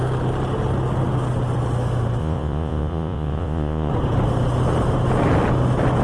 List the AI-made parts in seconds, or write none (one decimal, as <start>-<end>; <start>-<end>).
2.2-3.9